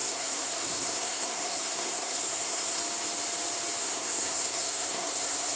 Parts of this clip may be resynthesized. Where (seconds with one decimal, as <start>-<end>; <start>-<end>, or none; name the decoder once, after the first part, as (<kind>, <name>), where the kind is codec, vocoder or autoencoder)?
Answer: 0.0-2.8 (codec, SNAC); 3.8-5.6